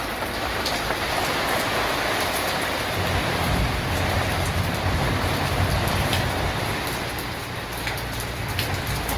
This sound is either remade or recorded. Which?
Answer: remade